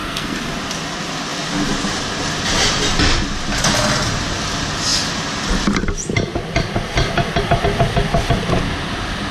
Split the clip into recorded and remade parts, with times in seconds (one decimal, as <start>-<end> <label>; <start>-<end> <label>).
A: 0.0-0.5 remade; 0.5-9.3 recorded